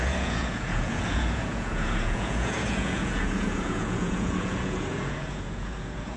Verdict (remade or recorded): remade